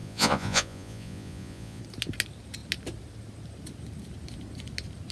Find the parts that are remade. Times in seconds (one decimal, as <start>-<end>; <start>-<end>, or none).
0.0-1.8